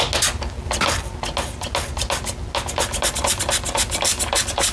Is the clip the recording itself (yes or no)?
yes